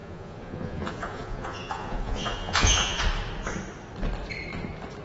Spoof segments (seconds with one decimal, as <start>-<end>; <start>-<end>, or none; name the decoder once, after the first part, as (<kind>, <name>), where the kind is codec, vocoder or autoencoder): 0.0-3.0 (vocoder, Vocos)